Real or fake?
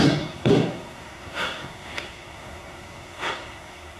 fake